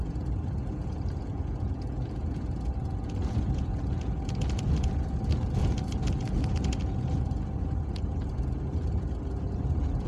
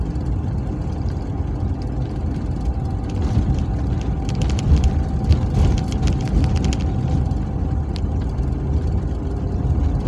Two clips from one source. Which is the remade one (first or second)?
first